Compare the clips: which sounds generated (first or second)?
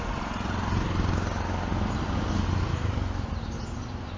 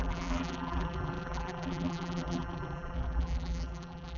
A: second